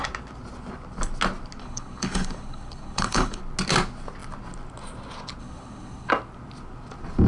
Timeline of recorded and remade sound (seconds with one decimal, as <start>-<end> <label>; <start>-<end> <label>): 0.0-1.6 recorded; 1.6-3.4 remade; 3.4-5.4 recorded; 5.4-6.1 remade; 6.1-7.3 recorded

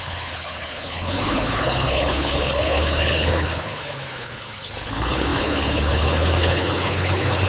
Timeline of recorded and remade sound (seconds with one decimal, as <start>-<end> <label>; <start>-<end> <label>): 0.0-7.5 remade

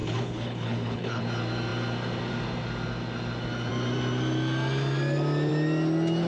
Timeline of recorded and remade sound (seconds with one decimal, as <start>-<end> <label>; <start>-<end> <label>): 0.0-1.2 remade; 1.2-6.3 recorded

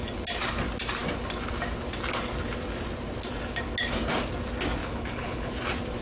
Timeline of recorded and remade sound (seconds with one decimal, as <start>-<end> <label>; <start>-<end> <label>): 0.0-4.8 recorded; 4.8-5.5 remade; 5.5-6.0 recorded

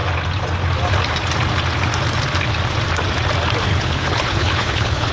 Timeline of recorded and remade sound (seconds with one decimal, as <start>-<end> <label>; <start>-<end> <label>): 0.0-3.7 recorded; 3.7-5.1 remade

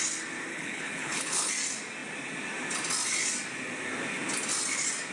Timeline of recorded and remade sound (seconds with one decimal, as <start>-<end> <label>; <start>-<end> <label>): 0.0-0.5 recorded; 0.5-1.5 remade; 1.5-5.1 recorded